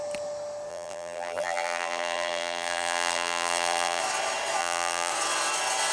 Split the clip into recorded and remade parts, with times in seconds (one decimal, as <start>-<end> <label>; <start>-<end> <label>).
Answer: 0.0-0.7 recorded; 0.7-4.0 remade; 4.0-4.6 recorded; 4.6-5.1 remade; 5.1-5.9 recorded